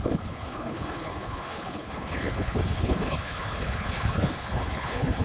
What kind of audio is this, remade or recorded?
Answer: remade